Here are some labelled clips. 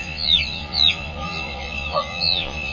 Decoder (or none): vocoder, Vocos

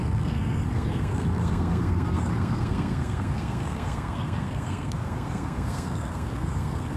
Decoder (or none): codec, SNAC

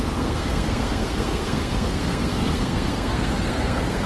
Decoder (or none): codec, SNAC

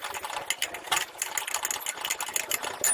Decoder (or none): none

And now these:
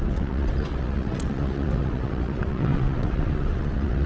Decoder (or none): vocoder, WaveNeXt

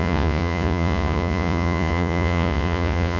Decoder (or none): vocoder, Vocos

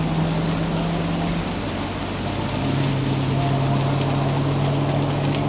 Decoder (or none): none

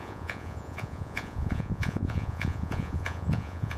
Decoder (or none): vocoder, Vocos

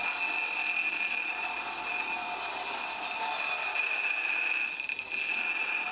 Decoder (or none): none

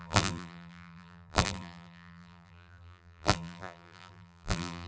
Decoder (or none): vocoder, BigVGAN v2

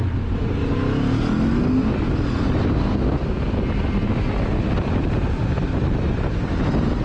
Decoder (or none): none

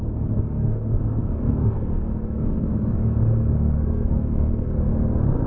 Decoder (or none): codec, SNAC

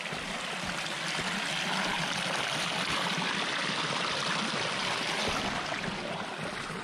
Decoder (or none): none